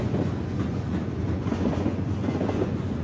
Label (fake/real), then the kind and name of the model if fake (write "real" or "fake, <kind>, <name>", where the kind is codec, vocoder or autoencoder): fake, vocoder, Vocos